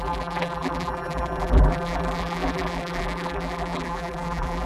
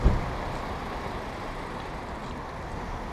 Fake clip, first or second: first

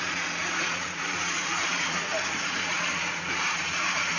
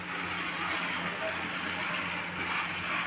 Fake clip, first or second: first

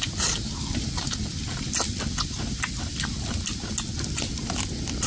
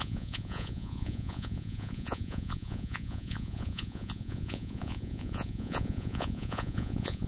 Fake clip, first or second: second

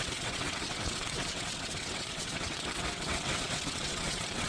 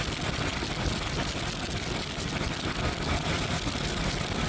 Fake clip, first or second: first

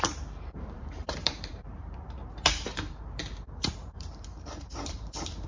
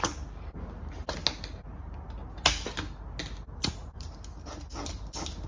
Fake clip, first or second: first